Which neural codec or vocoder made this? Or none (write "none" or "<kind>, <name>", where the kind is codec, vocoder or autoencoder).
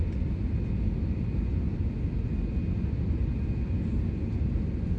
none